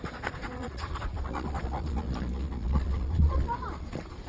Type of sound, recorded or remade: remade